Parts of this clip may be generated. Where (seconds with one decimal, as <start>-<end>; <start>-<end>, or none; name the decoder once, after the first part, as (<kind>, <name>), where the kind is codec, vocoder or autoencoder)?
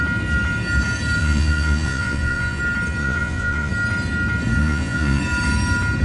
1.2-2.6 (vocoder, Vocos); 3.0-3.7; 4.6-5.2